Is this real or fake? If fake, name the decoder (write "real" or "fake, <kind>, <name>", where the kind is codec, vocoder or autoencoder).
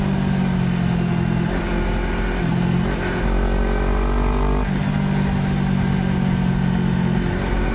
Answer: real